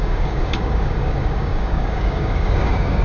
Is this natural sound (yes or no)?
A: no